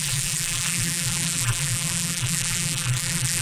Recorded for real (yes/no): no